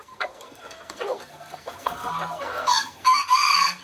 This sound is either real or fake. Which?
fake